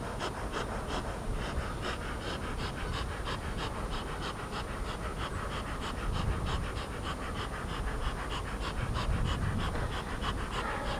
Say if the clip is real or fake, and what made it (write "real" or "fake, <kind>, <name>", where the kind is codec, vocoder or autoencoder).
real